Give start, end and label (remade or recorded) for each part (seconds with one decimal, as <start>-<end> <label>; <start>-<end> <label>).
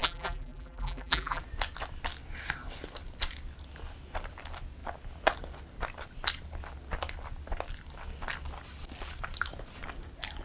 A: 0.0-1.4 remade; 1.4-10.4 recorded